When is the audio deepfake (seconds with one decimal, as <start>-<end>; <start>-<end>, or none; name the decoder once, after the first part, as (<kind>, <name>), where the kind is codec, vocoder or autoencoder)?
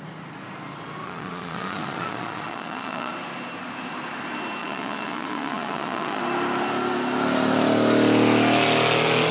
1.0-3.1 (vocoder, Vocos); 4.6-6.2